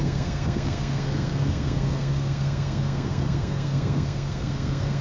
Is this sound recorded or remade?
remade